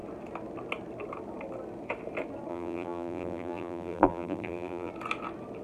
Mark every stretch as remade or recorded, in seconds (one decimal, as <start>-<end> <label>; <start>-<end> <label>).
0.0-2.5 recorded; 2.5-4.9 remade; 4.9-5.6 recorded